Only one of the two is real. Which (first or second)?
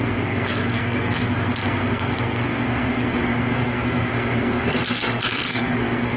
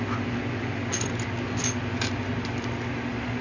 second